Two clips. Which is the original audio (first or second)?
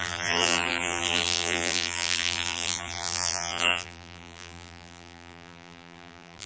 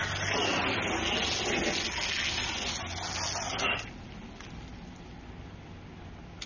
second